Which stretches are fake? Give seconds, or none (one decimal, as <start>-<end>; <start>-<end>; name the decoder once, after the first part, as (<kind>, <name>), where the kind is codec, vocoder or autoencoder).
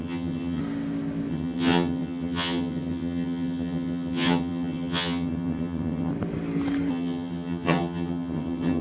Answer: 0.0-0.6 (vocoder, HiFi-GAN); 1.3-6.1; 6.9-8.8